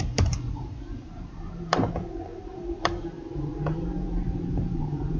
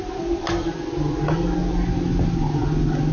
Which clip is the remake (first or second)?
first